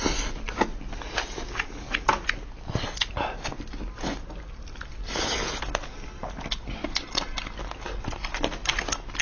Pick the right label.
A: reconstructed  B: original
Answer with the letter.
B